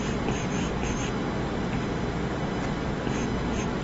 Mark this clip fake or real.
real